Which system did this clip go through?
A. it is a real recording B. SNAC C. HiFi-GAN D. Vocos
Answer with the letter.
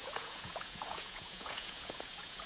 D